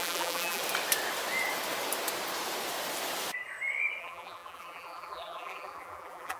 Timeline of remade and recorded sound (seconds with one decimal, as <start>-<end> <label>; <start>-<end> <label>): 0.0-0.6 remade; 0.6-4.0 recorded; 4.0-6.4 remade

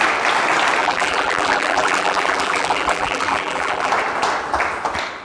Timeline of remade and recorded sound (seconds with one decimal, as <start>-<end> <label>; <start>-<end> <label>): 0.0-0.8 recorded; 0.8-3.9 remade; 3.9-5.2 recorded

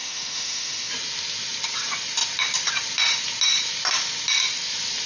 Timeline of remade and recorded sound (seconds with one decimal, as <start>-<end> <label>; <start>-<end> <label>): 0.0-0.9 remade; 0.9-5.1 recorded

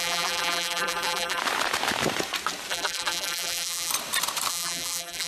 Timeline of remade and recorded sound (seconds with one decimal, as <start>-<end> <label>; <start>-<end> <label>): 0.0-1.4 remade; 1.4-2.7 recorded; 2.7-3.9 remade; 3.9-4.5 recorded; 4.5-5.3 remade